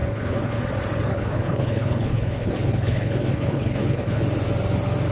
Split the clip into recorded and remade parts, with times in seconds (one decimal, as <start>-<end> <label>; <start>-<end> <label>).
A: 0.0-0.6 remade; 0.6-1.1 recorded; 1.1-4.2 remade; 4.2-5.1 recorded